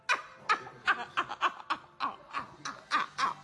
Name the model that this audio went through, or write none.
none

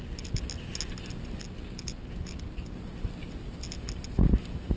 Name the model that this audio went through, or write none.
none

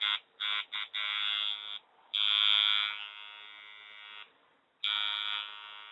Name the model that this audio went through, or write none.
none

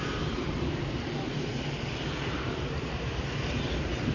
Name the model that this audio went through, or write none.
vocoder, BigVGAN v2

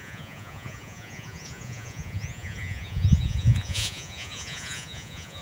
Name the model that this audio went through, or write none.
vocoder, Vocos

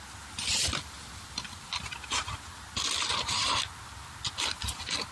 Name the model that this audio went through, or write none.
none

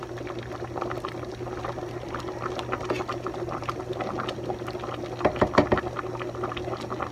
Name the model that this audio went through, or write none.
none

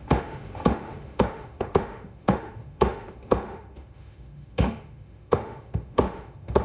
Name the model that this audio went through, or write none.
autoencoder, DAC-VAE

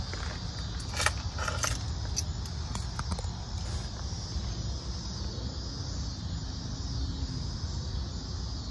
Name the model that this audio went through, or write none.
none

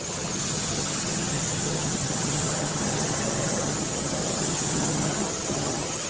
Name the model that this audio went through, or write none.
vocoder, HiFi-GAN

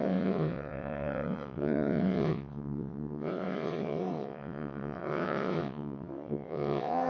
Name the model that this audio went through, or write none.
vocoder, WaveNeXt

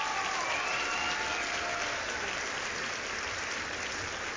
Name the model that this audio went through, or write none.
none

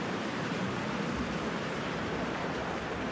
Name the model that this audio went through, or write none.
vocoder, BigVGAN v2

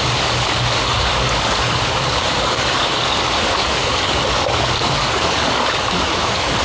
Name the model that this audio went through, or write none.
codec, DAC